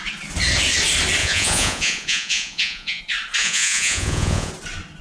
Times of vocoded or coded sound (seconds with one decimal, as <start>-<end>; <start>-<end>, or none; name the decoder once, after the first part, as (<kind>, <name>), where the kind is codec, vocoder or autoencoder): 1.2-3.0 (vocoder, Vocos); 3.4-4.5